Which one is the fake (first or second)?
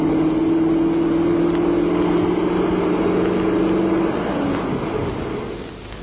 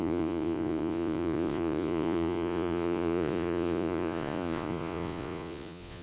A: second